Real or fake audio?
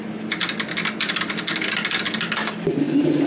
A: real